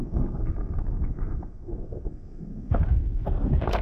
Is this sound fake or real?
fake